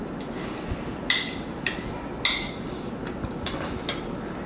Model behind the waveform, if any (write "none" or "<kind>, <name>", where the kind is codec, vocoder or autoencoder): none